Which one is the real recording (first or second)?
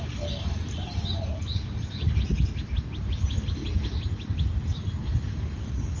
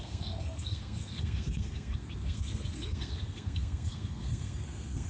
first